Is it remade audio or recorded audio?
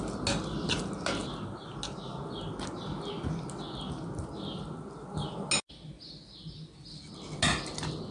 recorded